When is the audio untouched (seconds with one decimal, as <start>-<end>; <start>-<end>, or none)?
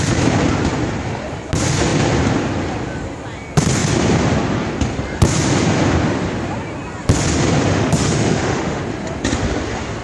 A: 0.0-7.7; 8.8-10.0